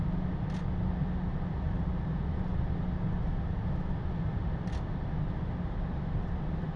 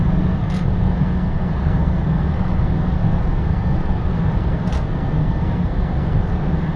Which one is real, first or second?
first